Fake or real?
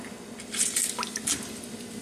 real